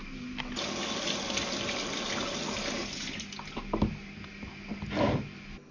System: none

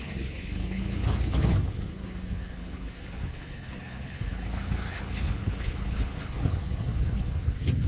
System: codec, HILCodec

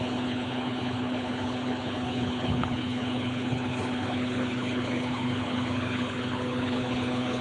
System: codec, HILCodec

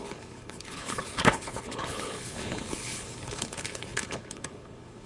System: codec, HILCodec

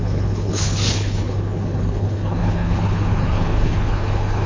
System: codec, HILCodec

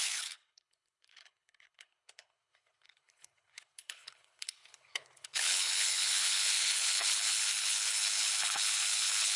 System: codec, HILCodec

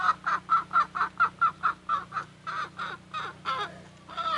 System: none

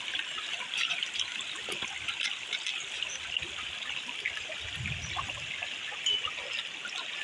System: none